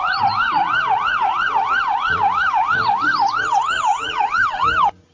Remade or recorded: remade